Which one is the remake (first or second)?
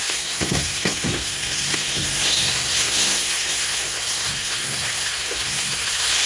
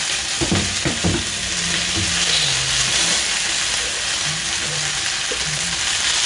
first